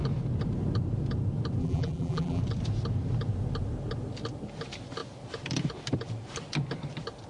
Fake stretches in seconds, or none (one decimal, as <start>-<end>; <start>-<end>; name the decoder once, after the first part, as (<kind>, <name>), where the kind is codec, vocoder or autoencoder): 1.6-2.4 (vocoder, BigVGAN v2)